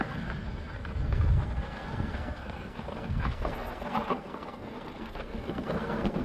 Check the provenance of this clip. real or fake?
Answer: fake